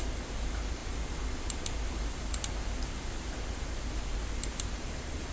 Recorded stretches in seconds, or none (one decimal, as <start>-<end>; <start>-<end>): 0.0-5.3

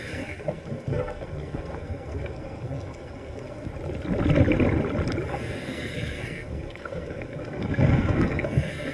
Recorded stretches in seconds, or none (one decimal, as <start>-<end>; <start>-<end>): 3.7-5.3

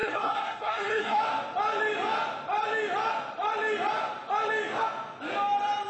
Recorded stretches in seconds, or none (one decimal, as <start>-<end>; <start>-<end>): 1.2-5.9

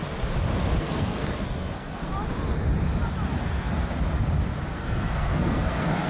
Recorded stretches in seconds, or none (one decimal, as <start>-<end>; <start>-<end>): 0.0-0.8; 2.1-3.4; 3.8-4.7